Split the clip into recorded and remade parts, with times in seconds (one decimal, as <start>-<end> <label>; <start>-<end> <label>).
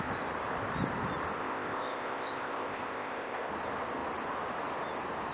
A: 0.0-1.4 recorded; 1.4-3.5 remade; 3.5-5.3 recorded